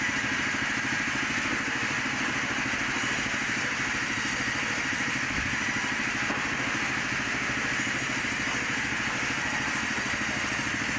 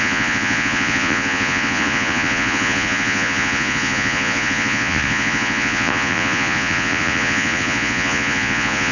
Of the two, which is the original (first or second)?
first